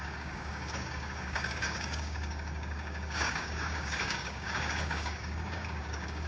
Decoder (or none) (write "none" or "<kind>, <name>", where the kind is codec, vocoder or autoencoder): codec, DAC